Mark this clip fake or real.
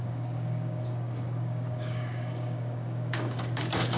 fake